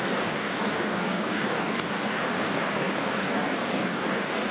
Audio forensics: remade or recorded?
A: remade